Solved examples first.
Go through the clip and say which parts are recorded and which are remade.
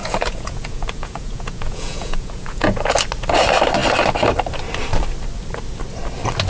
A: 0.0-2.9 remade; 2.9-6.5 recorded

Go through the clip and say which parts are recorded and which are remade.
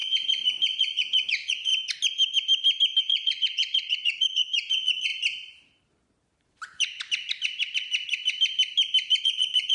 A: 0.0-1.7 remade; 1.7-3.0 recorded; 3.0-5.1 remade; 5.1-9.2 recorded; 9.2-9.7 remade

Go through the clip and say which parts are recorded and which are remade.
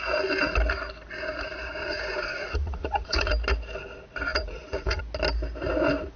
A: 0.0-1.9 recorded; 1.9-3.3 remade; 3.3-4.3 recorded; 4.3-5.0 remade; 5.0-6.2 recorded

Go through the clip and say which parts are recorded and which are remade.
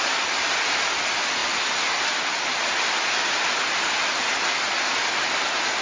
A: 0.0-5.8 recorded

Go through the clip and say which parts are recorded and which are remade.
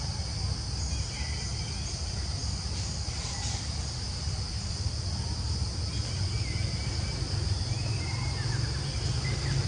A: 0.0-9.7 recorded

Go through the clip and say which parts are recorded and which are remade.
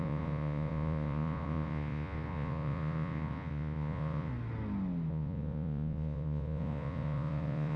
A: 0.0-4.3 remade; 4.3-5.1 recorded; 5.1-7.8 remade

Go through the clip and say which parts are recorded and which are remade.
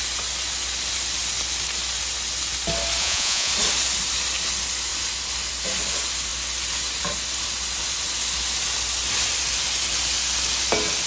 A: 0.0-3.0 recorded; 3.0-3.5 remade; 3.5-11.1 recorded